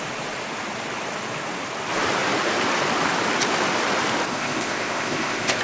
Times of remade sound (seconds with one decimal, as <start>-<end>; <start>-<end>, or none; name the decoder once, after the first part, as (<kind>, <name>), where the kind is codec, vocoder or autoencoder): 4.3-5.6 (codec, ZipCodec)